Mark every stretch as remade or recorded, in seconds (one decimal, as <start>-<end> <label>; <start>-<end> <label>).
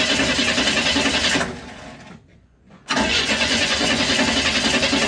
0.0-2.3 recorded; 2.3-4.3 remade; 4.3-5.1 recorded